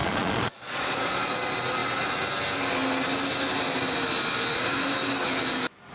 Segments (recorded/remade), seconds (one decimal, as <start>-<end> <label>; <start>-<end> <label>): 0.0-1.2 remade; 1.2-5.9 recorded